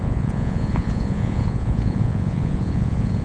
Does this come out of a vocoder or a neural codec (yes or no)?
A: yes